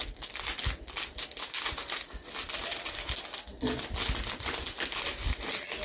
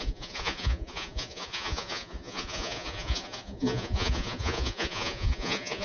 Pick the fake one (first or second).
second